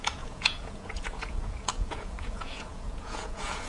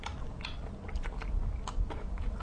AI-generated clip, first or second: first